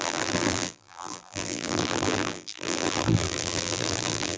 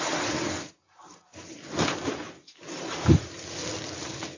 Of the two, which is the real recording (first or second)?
second